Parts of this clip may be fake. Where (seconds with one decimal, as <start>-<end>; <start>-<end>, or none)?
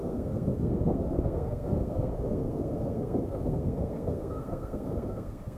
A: 0.0-5.6